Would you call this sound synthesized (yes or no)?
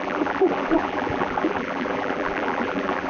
yes